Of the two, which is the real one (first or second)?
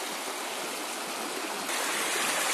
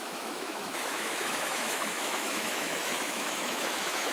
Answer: first